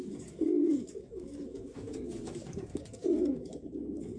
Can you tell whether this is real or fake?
fake